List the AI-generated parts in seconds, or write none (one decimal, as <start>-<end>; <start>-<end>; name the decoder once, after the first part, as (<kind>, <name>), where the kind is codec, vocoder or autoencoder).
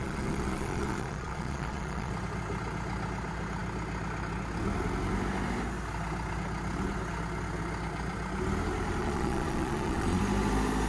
0.0-2.1 (vocoder, Vocos); 9.0-10.2